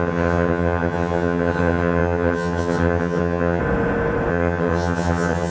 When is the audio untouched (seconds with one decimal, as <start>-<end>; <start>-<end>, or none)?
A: 3.6-4.3